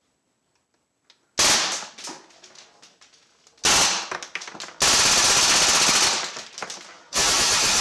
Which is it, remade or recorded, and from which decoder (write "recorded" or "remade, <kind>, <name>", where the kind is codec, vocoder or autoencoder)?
recorded